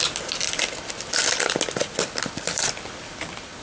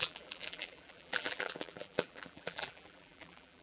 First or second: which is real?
first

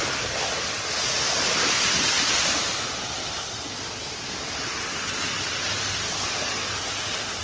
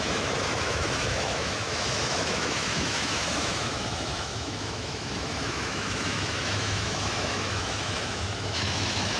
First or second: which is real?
first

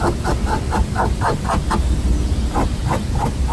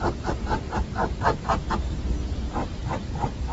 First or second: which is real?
first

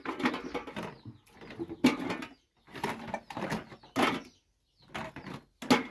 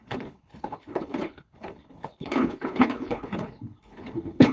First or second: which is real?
first